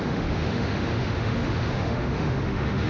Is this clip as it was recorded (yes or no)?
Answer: no